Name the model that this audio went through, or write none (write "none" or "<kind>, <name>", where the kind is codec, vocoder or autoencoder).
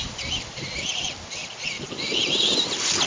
none